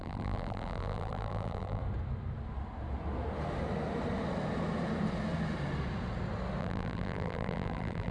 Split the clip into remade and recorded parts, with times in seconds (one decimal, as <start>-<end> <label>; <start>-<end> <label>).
0.0-1.8 remade; 1.8-6.6 recorded; 6.6-8.1 remade